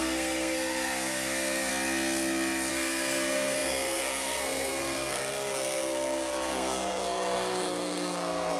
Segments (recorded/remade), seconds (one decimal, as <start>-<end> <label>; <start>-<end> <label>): 0.0-1.7 remade; 1.7-2.7 recorded; 2.7-8.6 remade